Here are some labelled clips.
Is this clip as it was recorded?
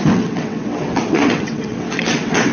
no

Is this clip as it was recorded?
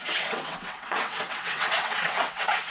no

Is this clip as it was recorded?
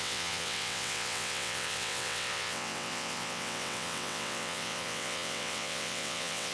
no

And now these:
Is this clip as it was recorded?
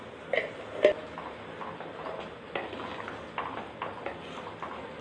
yes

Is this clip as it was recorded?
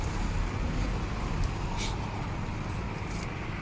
yes